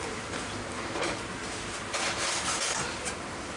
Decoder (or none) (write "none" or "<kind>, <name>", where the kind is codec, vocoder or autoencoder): vocoder, BigVGAN v2